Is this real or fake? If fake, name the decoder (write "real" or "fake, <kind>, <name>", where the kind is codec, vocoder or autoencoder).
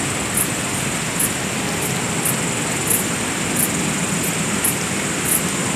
real